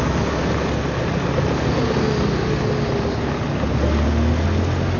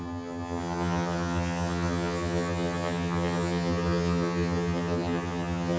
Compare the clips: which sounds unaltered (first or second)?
first